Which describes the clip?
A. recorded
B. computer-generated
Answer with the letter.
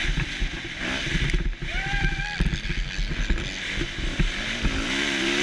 A